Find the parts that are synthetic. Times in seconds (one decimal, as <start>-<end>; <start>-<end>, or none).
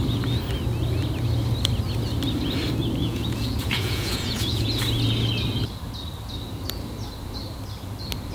3.0-4.8